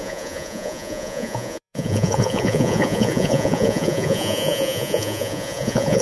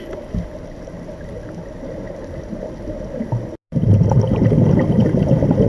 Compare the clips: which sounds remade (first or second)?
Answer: first